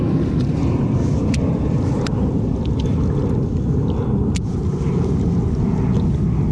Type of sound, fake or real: real